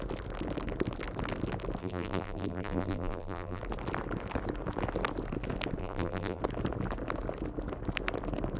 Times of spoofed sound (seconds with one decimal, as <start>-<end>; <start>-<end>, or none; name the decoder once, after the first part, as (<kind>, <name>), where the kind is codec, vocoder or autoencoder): 1.8-3.6 (vocoder, BigVGAN v2); 5.8-6.4